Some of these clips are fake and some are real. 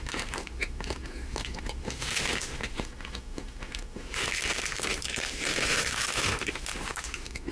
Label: fake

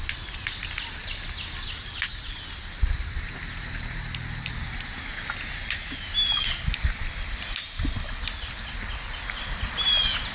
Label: real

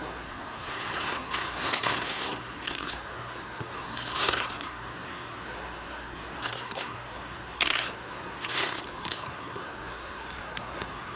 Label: fake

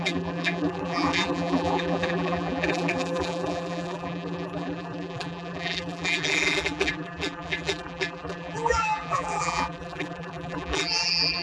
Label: fake